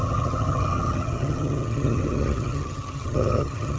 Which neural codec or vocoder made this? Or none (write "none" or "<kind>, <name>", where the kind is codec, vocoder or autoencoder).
vocoder, HiFi-GAN